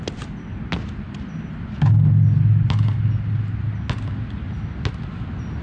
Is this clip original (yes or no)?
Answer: yes